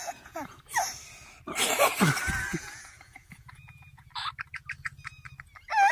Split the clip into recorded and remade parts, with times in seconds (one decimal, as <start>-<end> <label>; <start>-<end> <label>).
0.0-0.6 remade; 0.6-2.5 recorded; 2.5-4.1 remade; 4.1-5.9 recorded